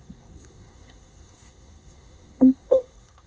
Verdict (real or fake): fake